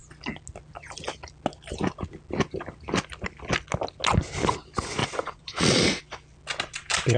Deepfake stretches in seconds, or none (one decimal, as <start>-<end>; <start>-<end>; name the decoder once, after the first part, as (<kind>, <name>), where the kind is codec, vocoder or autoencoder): 5.0-6.0 (vocoder, Vocos)